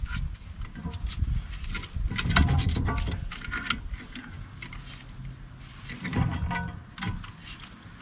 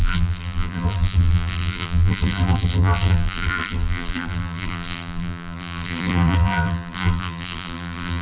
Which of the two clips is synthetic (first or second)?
second